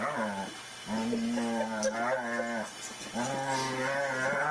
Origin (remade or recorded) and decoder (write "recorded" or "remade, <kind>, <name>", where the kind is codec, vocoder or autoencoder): recorded